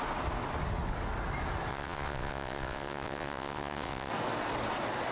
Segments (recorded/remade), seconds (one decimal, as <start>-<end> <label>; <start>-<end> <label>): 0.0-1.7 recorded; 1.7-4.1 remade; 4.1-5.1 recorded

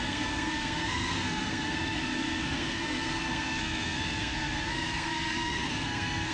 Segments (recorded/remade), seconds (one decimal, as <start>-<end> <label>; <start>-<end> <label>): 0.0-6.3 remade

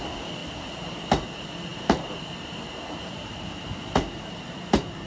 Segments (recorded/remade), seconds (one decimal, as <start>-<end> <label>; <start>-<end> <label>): 0.0-0.4 recorded; 0.4-1.1 remade; 1.1-1.7 recorded; 1.7-5.1 remade

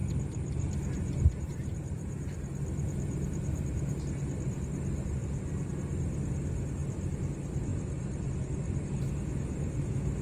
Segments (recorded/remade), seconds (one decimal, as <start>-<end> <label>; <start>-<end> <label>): 0.0-4.0 remade; 4.0-5.2 recorded; 5.2-5.7 remade; 5.7-10.2 recorded

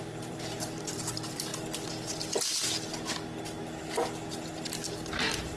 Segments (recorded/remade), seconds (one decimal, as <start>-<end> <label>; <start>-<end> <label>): 0.0-1.5 remade; 1.5-4.9 recorded; 4.9-5.6 remade

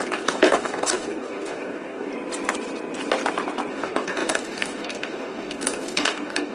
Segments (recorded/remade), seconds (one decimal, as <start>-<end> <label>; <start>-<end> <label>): 0.0-2.1 remade; 2.1-3.7 recorded; 3.7-6.5 remade